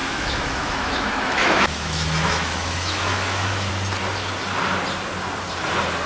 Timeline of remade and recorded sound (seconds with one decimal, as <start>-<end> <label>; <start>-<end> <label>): 0.0-3.7 remade; 3.7-6.1 recorded